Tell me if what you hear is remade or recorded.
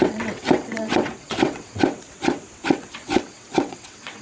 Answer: remade